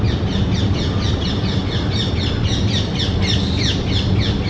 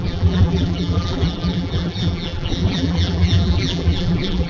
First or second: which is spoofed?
second